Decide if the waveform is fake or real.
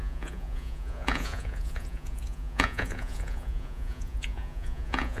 fake